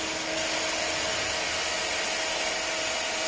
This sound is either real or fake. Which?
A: real